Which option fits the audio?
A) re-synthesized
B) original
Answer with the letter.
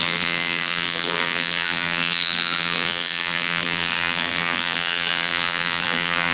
A